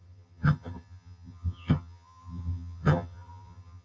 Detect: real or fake fake